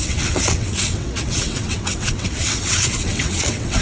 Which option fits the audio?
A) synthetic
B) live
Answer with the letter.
A